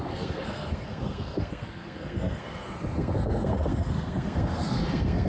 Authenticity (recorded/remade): remade